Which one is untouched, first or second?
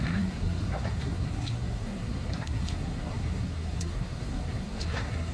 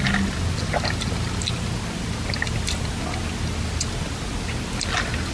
second